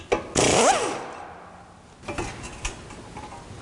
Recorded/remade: recorded